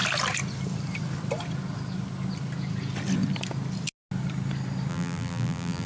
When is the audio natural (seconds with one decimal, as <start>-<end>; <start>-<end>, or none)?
0.0-4.9